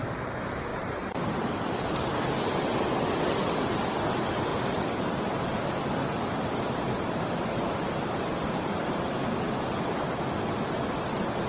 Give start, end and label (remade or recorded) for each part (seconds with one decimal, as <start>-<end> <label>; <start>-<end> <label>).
0.0-0.7 recorded; 0.7-1.5 remade; 1.5-4.5 recorded; 4.5-5.1 remade; 5.1-11.5 recorded